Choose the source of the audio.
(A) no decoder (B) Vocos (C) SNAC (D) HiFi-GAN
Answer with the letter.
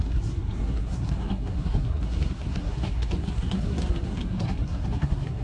C